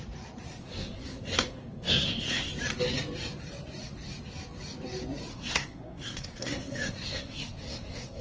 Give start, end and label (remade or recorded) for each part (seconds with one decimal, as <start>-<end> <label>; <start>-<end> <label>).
0.0-0.6 recorded; 0.6-2.5 remade; 2.5-5.3 recorded; 5.3-8.2 remade